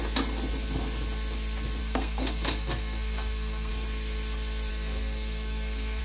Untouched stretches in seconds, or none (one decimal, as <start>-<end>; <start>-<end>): 0.0-1.8; 3.7-4.7